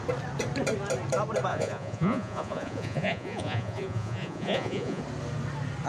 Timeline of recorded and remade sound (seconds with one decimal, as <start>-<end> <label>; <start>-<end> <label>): 0.0-1.5 recorded; 1.5-5.0 remade; 5.0-5.9 recorded